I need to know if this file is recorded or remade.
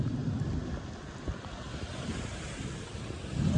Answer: recorded